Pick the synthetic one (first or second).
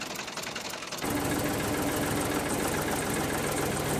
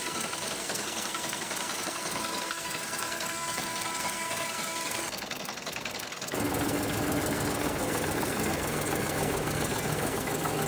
second